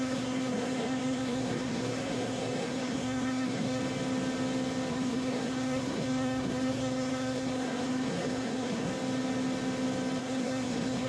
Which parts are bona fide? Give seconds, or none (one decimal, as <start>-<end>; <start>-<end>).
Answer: 3.8-4.9; 8.9-10.2